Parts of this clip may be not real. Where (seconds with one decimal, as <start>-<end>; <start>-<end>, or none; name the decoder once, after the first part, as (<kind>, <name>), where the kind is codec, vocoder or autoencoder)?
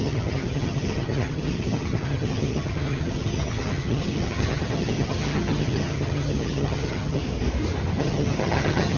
0.0-7.2 (vocoder, HiFi-GAN); 8.0-9.0